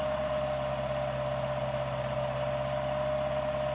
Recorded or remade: recorded